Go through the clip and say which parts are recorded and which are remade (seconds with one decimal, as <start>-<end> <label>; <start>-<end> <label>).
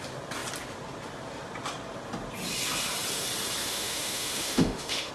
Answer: 0.0-3.6 recorded; 3.6-5.1 remade